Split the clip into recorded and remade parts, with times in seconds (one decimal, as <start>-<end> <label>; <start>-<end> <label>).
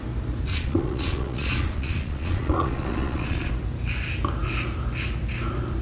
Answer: 0.0-0.5 recorded; 0.5-3.5 remade; 3.5-5.8 recorded